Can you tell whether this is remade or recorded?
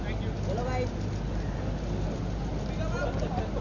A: recorded